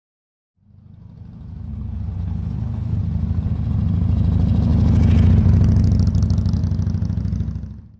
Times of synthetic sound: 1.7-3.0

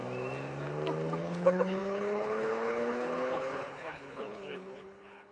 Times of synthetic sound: 1.2-5.3

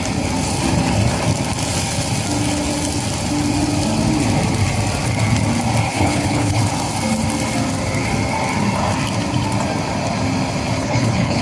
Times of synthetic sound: 5.9-6.6; 10.8-11.4

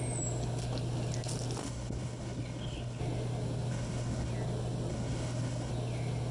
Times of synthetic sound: 1.6-3.0; 3.7-4.3; 4.9-5.7

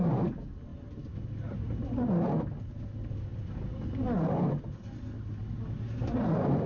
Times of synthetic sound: none

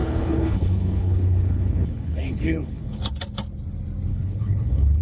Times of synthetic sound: 0.0-3.0; 4.1-5.0

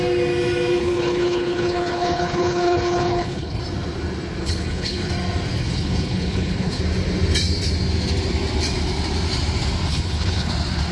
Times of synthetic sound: 0.8-3.6; 4.4-5.1; 5.6-6.8; 9.9-10.5